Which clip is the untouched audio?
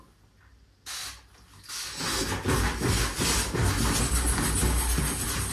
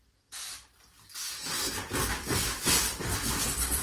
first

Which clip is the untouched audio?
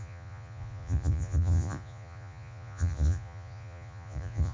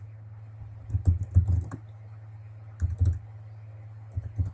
second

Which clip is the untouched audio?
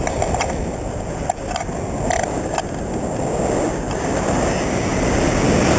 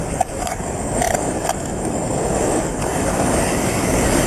first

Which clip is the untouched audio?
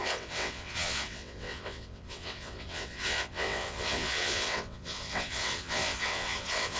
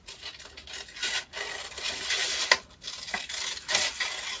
second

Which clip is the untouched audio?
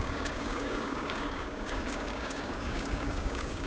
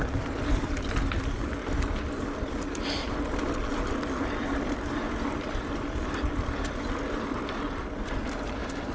second